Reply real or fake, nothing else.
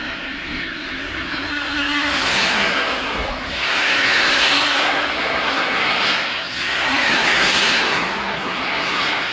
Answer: fake